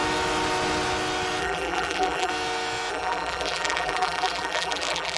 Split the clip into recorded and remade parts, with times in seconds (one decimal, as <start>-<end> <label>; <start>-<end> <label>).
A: 0.0-1.4 recorded; 1.4-2.3 remade; 2.3-2.9 recorded; 2.9-5.2 remade